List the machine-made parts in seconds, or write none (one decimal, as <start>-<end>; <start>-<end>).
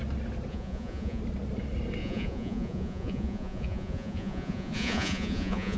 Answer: 0.5-1.2; 2.0-5.8